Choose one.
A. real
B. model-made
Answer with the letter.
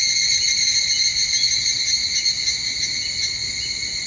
A